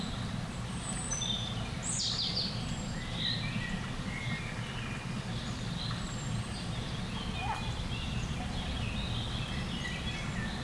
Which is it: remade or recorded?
recorded